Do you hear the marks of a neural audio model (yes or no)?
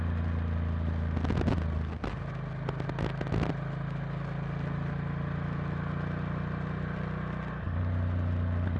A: no